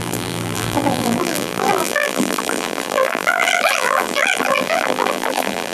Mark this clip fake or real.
fake